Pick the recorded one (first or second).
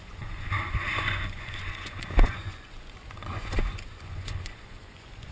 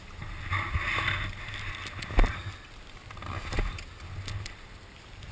second